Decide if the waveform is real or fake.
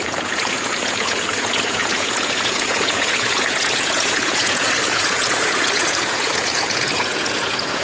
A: fake